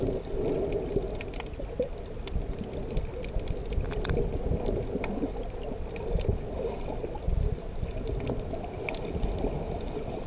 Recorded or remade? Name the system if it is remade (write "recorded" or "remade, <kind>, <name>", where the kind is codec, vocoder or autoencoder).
recorded